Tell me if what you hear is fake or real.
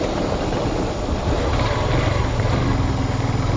real